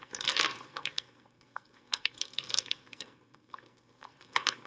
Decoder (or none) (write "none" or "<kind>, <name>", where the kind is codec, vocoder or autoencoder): codec, SNAC